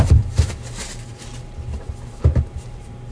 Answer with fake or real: fake